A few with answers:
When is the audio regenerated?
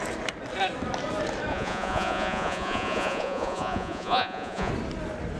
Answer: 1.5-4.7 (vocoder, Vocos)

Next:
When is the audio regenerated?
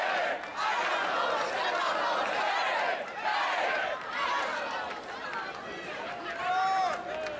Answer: 3.3-6.5 (vocoder, BigVGAN v2)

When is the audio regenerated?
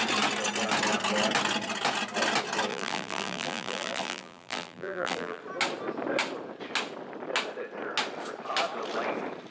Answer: 2.7-5.4 (vocoder, BigVGAN v2)